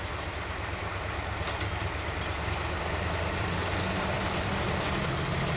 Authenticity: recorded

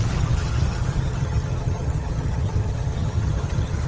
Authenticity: remade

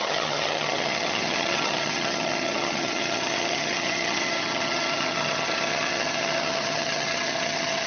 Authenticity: remade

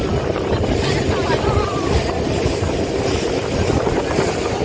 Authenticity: recorded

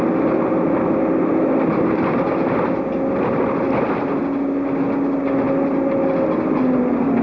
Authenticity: recorded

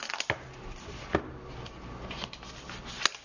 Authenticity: recorded